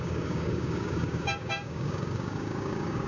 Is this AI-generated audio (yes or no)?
yes